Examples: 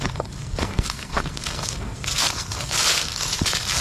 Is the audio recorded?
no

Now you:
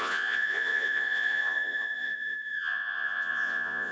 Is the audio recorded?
no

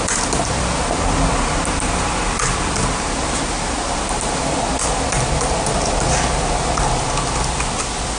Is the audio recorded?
yes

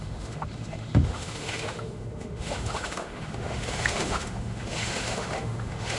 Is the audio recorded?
no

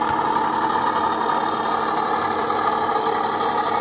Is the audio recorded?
yes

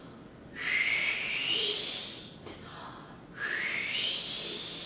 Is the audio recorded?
yes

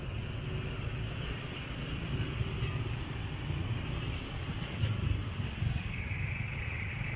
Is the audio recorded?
yes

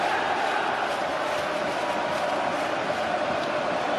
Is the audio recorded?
yes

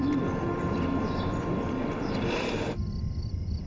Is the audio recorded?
no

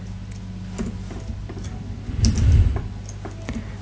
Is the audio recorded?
yes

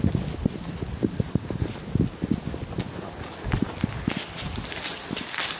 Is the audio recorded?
yes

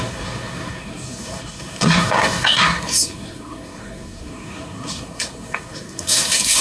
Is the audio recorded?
no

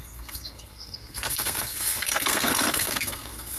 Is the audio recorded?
no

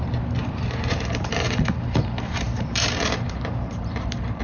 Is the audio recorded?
no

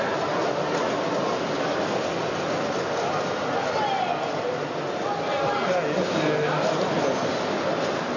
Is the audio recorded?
yes